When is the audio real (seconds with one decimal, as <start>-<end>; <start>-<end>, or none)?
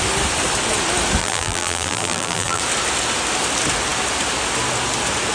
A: 0.0-1.2; 2.6-5.3